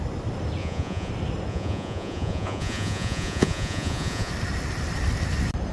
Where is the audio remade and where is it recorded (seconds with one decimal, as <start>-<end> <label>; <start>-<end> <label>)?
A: 0.0-0.6 recorded; 0.6-1.1 remade; 1.1-1.5 recorded; 1.5-4.3 remade; 4.3-5.7 recorded